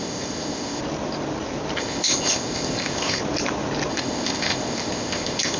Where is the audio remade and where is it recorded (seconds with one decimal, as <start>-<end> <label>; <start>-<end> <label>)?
0.0-0.8 remade; 0.8-1.8 recorded; 1.8-3.2 remade; 3.2-3.9 recorded; 3.9-5.6 remade